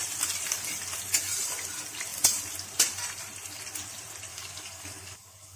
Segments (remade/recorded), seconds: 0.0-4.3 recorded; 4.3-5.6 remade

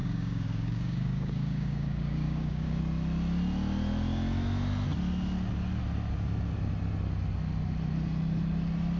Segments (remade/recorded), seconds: 0.0-2.8 remade; 2.8-9.0 recorded

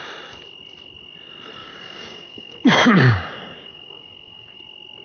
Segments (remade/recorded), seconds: 0.0-1.6 recorded; 1.6-4.6 remade; 4.6-5.0 recorded